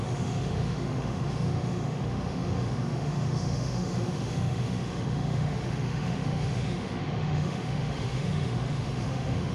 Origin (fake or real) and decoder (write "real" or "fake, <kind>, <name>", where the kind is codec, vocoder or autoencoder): fake, autoencoder, DAC-VAE